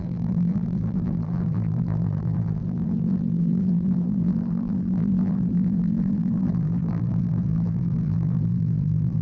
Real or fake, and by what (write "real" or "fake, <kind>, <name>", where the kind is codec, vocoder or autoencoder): fake, vocoder, BigVGAN v2